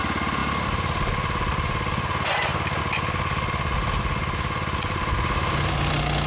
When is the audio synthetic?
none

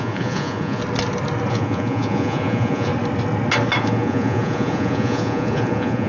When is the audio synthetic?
0.0-0.8; 1.5-2.9; 3.8-6.1